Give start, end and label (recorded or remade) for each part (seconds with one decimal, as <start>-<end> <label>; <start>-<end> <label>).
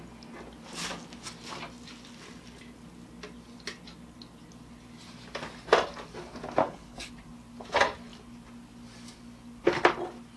0.0-6.6 recorded; 6.6-7.1 remade; 7.1-10.4 recorded